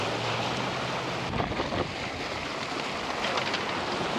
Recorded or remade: recorded